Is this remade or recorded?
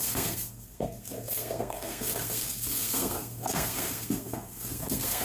remade